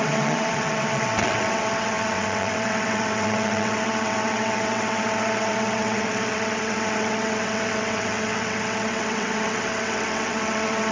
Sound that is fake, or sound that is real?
fake